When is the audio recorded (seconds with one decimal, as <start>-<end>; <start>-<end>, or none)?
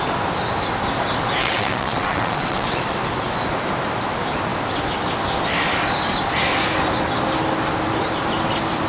0.0-1.4; 2.8-8.9